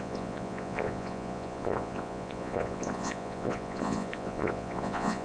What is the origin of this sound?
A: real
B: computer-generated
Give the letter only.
B